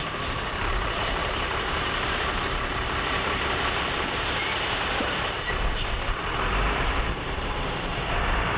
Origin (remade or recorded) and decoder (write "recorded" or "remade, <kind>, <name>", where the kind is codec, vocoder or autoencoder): remade, vocoder, BigVGAN v2